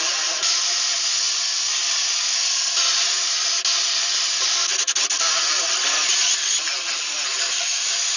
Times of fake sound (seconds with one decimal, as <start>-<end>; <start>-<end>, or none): none